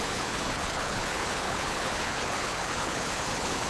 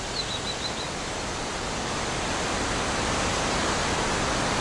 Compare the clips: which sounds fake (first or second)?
first